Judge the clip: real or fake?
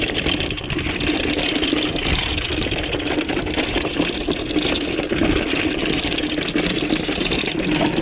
real